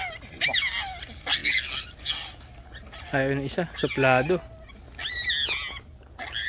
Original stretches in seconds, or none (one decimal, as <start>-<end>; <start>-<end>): 0.0-6.5